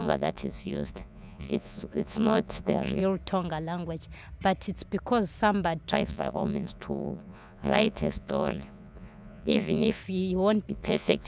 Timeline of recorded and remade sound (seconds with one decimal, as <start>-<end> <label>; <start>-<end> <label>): 0.0-3.0 remade; 3.0-5.9 recorded; 5.9-10.0 remade; 10.0-10.7 recorded; 10.7-11.3 remade